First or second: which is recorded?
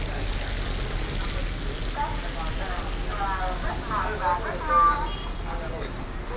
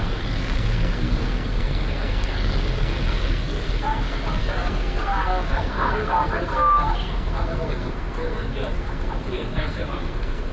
first